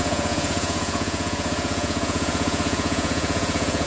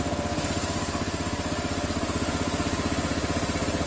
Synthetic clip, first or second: first